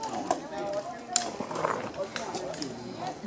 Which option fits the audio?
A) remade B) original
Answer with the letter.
B